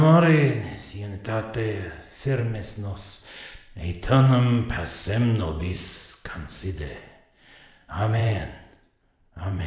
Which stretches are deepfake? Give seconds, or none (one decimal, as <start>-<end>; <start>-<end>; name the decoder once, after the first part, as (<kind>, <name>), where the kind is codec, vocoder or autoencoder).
5.6-7.0 (vocoder, BigVGAN v2); 8.2-9.7